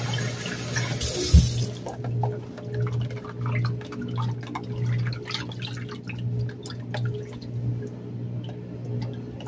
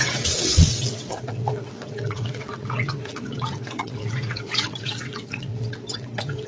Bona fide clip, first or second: first